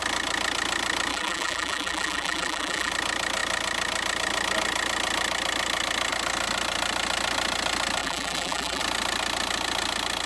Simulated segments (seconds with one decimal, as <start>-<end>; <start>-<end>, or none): 1.1-2.9; 8.0-8.8